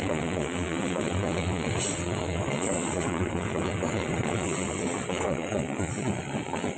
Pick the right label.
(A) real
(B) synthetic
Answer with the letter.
B